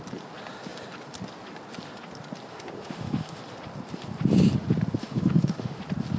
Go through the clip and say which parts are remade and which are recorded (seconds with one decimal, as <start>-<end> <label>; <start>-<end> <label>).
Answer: 0.0-2.5 recorded; 2.5-3.4 remade; 3.4-5.0 recorded; 5.0-5.8 remade; 5.8-6.2 recorded